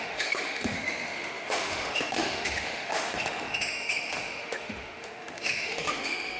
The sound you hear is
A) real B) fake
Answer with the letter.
B